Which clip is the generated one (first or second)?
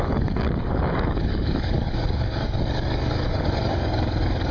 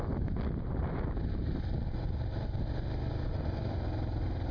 first